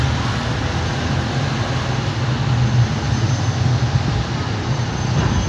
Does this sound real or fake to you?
real